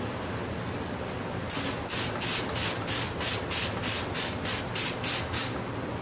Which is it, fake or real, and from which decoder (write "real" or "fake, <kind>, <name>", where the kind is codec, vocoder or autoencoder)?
real